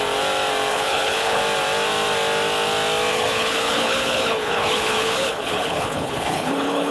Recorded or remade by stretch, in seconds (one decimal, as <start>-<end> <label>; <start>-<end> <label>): 0.0-0.7 recorded; 0.7-1.4 remade; 1.4-3.1 recorded; 3.1-6.9 remade